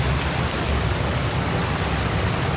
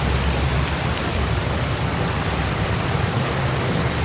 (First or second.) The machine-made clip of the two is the second